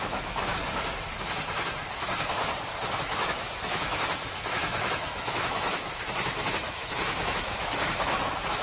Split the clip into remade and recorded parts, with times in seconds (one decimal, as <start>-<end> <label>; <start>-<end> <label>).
0.0-0.6 remade; 0.6-2.9 recorded; 2.9-8.6 remade